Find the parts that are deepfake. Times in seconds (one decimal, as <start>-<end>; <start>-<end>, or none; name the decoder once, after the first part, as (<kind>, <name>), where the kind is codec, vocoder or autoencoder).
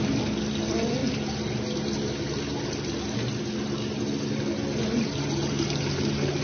none